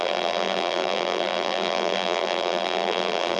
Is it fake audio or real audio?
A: fake